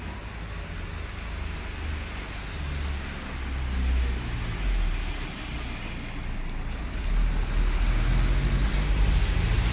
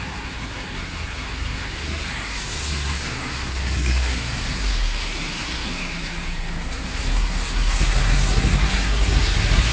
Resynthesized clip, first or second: second